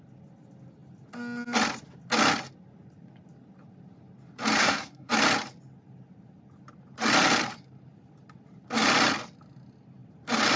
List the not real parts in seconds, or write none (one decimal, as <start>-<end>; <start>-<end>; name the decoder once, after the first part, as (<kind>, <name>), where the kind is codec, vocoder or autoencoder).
4.6-5.1 (codec, SNAC)